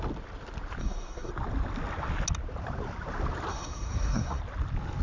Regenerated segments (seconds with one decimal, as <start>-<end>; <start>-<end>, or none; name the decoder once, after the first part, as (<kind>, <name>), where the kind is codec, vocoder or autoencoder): 0.8-1.3 (codec, SNAC); 3.5-4.4